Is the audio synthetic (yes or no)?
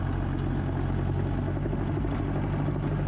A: no